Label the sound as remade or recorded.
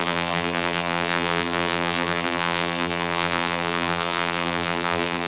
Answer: remade